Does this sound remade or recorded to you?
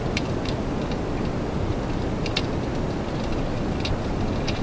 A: recorded